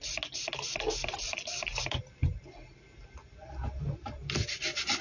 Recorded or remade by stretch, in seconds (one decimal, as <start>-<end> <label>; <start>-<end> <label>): 0.0-5.0 recorded